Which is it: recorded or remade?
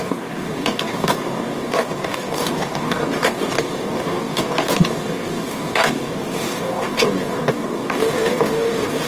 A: remade